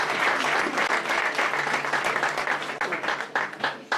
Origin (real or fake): real